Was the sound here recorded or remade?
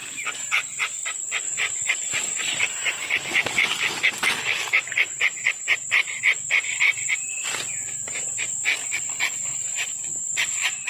recorded